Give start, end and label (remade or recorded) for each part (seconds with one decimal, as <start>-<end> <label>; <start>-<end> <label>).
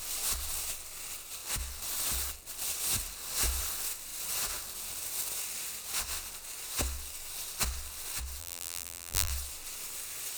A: 0.0-8.4 recorded; 8.4-9.3 remade; 9.3-10.4 recorded